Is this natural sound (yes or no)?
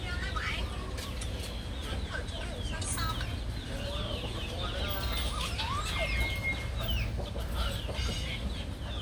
yes